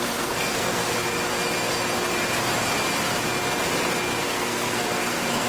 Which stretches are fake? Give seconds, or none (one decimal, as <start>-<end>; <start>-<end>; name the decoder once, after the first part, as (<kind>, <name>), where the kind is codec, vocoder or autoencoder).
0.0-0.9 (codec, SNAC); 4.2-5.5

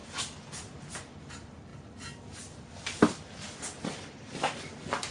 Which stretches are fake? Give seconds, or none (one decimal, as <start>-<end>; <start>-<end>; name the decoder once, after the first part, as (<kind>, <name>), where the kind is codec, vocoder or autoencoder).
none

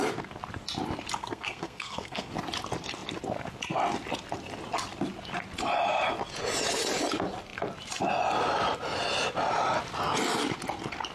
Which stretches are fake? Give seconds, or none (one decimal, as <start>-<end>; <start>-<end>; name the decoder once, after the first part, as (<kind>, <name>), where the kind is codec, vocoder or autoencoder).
1.2-2.3 (codec, SNAC)